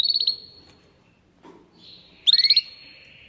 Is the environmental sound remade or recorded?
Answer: recorded